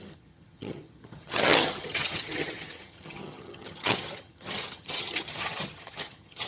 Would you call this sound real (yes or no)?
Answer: no